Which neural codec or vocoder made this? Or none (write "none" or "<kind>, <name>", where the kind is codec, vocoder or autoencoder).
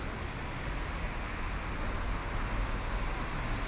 none